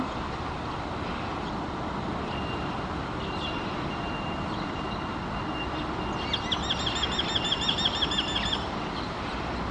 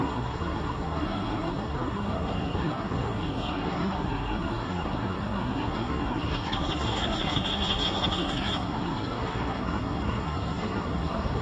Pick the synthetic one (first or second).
second